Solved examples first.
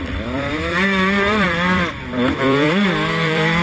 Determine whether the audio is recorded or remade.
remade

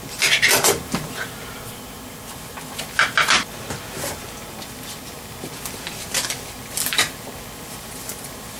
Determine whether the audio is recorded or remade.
recorded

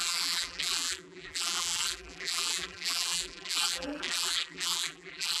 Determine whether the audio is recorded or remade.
remade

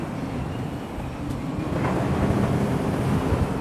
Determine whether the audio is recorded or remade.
recorded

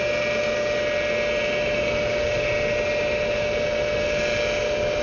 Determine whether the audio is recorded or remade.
recorded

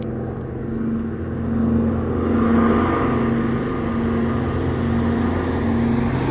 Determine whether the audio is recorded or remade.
recorded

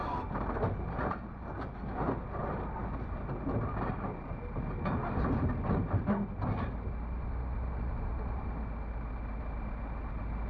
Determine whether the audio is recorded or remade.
recorded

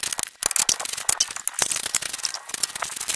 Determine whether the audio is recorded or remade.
recorded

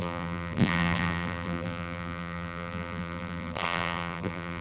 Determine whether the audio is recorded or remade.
remade